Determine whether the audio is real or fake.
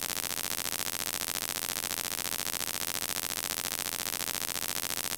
fake